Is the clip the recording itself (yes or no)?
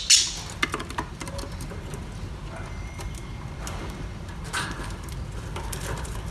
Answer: yes